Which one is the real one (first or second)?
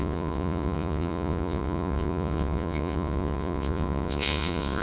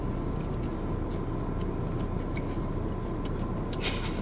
second